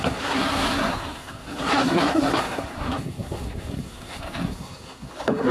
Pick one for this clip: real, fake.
fake